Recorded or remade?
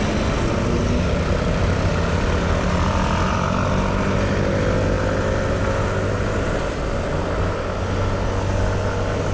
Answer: recorded